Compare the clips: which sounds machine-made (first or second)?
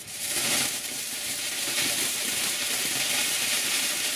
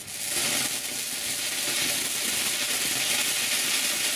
first